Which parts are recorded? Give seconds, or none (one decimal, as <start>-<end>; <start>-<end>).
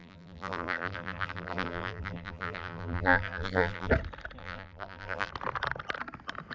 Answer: 3.9-4.4; 5.3-6.5